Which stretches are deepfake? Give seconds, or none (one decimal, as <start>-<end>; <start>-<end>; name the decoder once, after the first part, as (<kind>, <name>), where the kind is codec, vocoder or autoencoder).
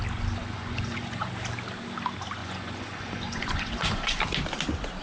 0.4-1.3 (vocoder, Vocos); 2.4-4.2